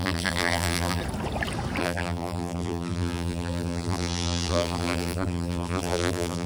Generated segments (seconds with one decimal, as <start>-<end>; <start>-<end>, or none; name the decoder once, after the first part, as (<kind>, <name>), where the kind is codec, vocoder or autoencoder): 0.0-1.0 (vocoder, BigVGAN v2); 1.8-6.5